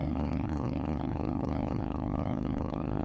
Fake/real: fake